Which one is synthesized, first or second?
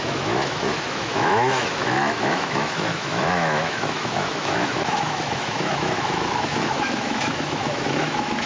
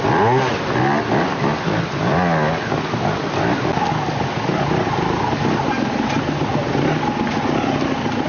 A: first